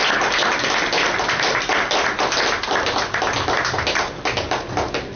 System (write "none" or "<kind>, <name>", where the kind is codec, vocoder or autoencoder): none